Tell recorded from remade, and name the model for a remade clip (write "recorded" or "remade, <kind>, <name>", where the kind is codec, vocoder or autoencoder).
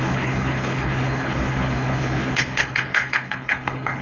remade, codec, HILCodec